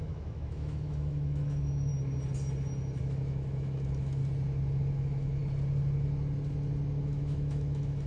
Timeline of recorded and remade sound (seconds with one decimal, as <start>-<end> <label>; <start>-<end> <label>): 0.0-1.9 remade; 1.9-3.0 recorded; 3.0-4.2 remade; 4.2-4.9 recorded; 4.9-5.4 remade; 5.4-7.0 recorded; 7.0-8.1 remade

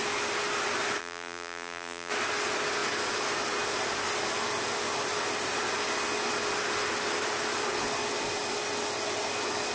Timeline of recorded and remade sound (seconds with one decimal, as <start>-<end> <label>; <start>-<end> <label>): 0.0-1.0 recorded; 1.0-2.1 remade; 2.1-9.7 recorded

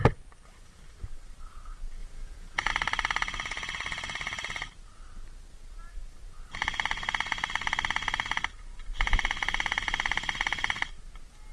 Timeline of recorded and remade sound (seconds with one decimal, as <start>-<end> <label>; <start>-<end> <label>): 0.0-2.0 recorded; 2.0-2.7 remade; 2.7-11.5 recorded

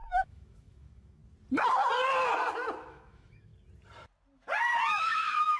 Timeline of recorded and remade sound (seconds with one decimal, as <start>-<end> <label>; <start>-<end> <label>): 0.0-1.2 remade; 1.2-2.9 recorded; 2.9-3.5 remade; 3.5-5.0 recorded; 5.0-5.6 remade

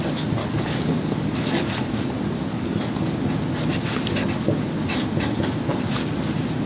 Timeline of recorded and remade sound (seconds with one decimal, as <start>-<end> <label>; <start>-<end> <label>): 0.0-0.4 recorded; 0.4-2.0 remade; 2.0-2.5 recorded; 2.5-3.2 remade; 3.2-6.7 recorded

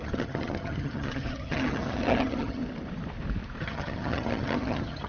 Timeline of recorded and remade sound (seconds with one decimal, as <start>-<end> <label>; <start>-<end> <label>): 0.0-2.6 remade; 2.6-3.6 recorded; 3.6-5.1 remade

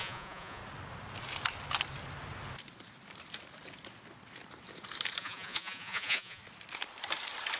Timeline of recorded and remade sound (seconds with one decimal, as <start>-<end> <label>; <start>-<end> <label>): 0.0-0.6 remade; 0.6-5.2 recorded; 5.2-6.4 remade; 6.4-7.6 recorded

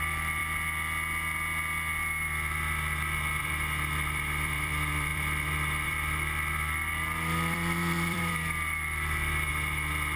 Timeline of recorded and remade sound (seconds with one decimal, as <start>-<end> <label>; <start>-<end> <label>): 0.0-0.4 remade; 0.4-3.4 recorded; 3.4-10.2 remade